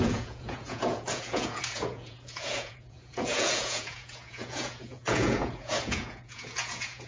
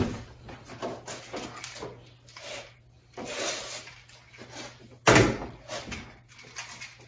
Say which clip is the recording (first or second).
second